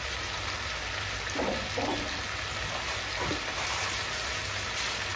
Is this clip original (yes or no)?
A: yes